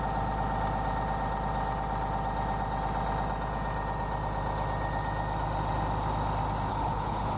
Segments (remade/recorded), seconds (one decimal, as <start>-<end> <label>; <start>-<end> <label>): 0.0-6.7 recorded; 6.7-7.4 remade

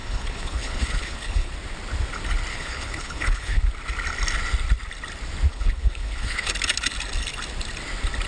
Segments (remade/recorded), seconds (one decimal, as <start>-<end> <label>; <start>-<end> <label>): 0.0-1.5 remade; 1.5-2.5 recorded; 2.5-3.6 remade; 3.6-5.5 recorded; 5.5-6.5 remade; 6.5-8.3 recorded

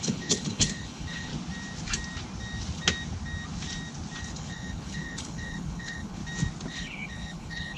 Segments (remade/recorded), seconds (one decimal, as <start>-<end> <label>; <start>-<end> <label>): 0.0-1.3 remade; 1.3-4.2 recorded; 4.2-6.2 remade; 6.2-6.7 recorded; 6.7-7.8 remade

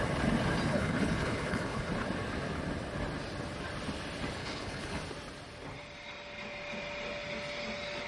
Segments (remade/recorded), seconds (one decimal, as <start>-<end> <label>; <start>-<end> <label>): 0.0-0.7 recorded; 0.7-1.9 remade; 1.9-4.4 recorded; 4.4-5.0 remade; 5.0-8.1 recorded

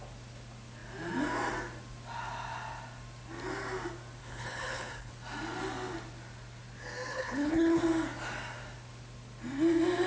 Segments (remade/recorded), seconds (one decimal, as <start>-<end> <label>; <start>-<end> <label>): 0.0-4.2 recorded; 4.2-5.1 remade; 5.1-7.1 recorded; 7.1-7.8 remade; 7.8-10.1 recorded